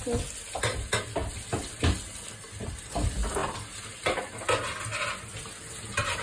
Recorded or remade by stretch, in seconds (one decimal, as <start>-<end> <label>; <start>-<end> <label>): 0.0-6.2 recorded